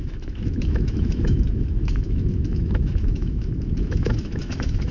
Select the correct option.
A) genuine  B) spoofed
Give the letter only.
B